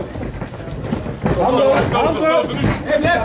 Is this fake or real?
real